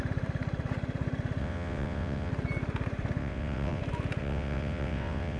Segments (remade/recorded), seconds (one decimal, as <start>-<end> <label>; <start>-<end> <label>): 0.0-1.4 recorded; 1.4-2.3 remade; 2.3-3.2 recorded; 3.2-3.8 remade; 3.8-4.2 recorded; 4.2-5.4 remade